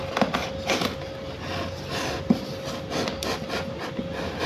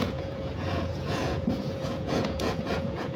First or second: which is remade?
second